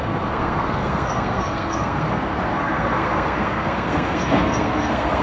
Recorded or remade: remade